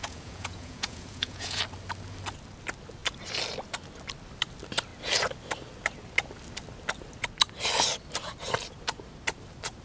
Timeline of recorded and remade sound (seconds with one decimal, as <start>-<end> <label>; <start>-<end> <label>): 0.0-1.6 remade; 1.6-9.8 recorded